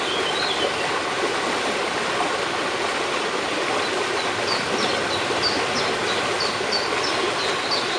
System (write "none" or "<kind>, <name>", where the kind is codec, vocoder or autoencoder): none